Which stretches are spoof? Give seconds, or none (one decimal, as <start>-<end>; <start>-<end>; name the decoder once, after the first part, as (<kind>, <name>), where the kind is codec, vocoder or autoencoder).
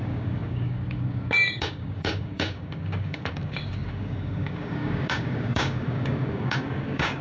0.0-7.2 (codec, DAC)